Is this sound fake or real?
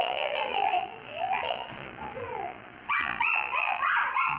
fake